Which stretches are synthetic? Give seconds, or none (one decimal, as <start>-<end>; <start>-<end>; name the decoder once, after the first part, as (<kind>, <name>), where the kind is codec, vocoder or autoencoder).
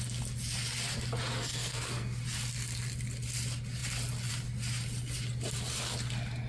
1.3-2.2 (codec, SNAC)